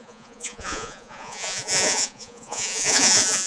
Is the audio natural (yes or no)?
no